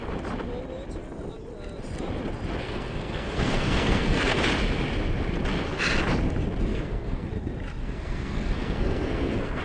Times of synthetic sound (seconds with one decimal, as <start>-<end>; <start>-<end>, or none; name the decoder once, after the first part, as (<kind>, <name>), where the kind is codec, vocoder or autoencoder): 2.6-4.4 (codec, SNAC); 6.7-7.3; 7.8-9.6